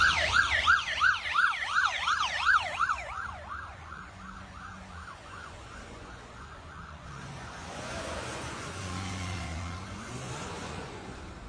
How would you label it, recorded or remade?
remade